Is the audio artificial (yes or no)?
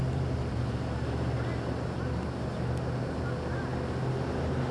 no